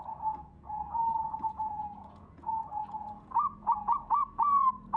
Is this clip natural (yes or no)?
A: no